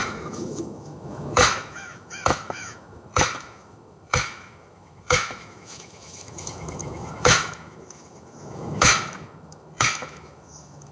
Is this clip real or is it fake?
fake